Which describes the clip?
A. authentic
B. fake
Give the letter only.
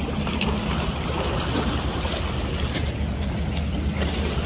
A